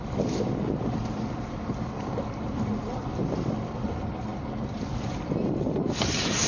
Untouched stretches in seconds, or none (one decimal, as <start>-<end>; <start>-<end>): 0.0-6.5